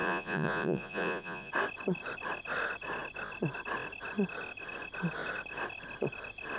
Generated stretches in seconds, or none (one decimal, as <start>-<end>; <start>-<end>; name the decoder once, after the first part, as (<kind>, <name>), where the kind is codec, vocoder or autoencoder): 0.0-1.5 (vocoder, Vocos)